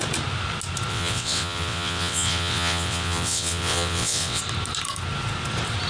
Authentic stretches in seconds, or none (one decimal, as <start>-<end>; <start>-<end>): 0.0-0.9; 4.4-5.9